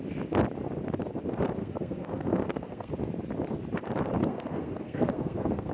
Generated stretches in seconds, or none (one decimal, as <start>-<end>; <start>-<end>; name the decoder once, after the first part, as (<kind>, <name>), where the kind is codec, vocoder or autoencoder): 1.6-2.9 (codec, SNAC); 4.3-5.7

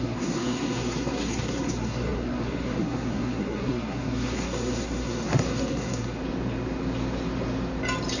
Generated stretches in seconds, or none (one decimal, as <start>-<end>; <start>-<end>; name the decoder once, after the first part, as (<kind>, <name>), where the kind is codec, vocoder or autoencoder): 0.0-6.2 (codec, SNAC)